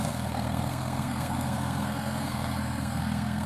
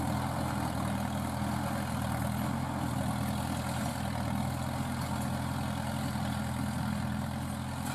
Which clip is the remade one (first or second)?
first